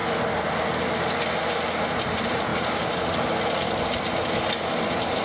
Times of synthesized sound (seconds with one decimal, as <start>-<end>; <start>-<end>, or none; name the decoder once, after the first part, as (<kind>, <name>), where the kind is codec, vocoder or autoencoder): none